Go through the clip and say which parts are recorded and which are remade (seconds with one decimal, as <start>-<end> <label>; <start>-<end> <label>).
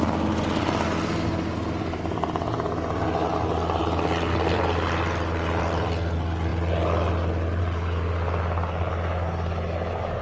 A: 0.0-10.2 recorded